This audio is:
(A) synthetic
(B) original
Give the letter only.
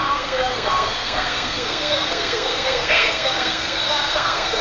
A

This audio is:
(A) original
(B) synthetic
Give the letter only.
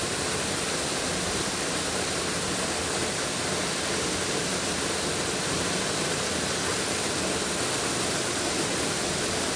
A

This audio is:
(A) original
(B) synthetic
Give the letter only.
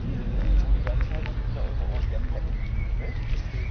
A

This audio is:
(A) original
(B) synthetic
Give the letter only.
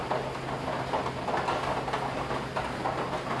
A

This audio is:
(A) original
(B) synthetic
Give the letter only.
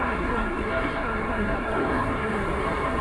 B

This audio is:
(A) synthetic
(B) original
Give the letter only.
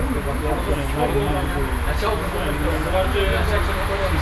B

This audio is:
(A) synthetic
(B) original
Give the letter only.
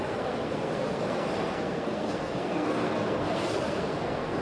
A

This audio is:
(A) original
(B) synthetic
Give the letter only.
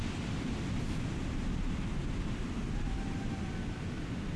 A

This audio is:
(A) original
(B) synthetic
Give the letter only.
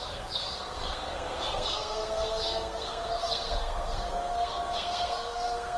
B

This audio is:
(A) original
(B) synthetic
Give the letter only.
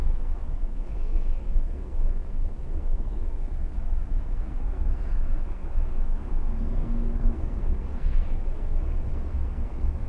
B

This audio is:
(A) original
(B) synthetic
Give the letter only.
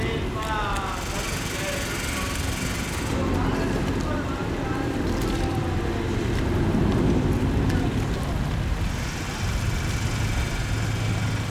A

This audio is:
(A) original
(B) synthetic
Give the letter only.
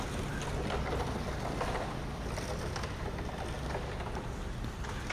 A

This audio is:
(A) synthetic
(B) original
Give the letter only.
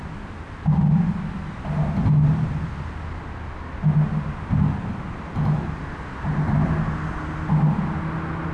B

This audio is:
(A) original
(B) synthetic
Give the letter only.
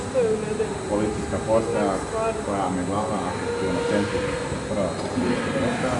A